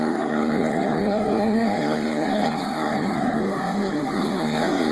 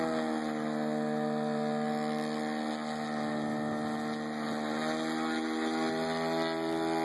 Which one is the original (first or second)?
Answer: second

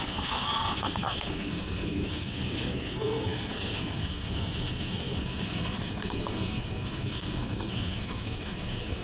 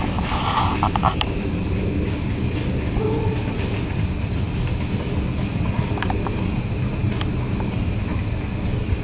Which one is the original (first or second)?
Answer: second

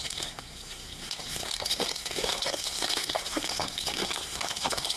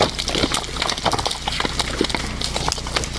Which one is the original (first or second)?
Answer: second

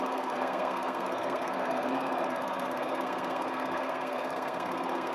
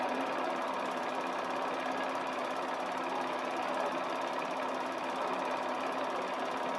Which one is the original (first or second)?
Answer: second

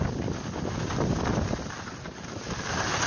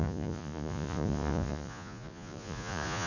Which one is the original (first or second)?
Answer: first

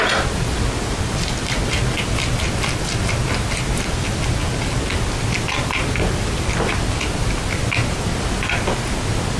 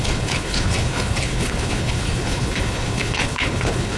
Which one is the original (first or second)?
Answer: first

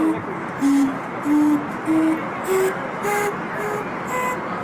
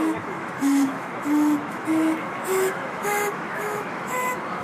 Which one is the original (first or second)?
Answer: first